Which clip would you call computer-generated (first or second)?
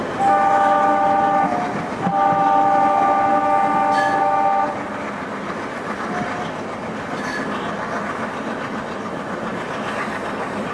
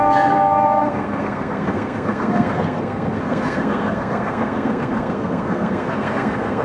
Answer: second